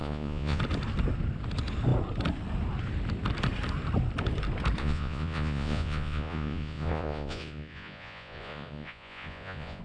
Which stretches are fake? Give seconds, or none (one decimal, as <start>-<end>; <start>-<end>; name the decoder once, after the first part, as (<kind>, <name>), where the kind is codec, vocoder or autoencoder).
0.0-0.6 (vocoder, Vocos); 4.8-9.8